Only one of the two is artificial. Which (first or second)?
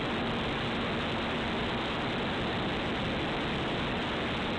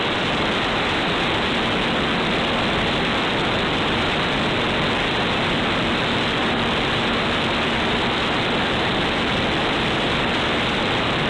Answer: second